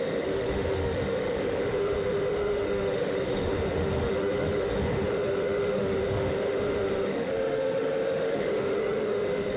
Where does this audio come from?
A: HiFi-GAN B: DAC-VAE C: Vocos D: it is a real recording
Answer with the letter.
B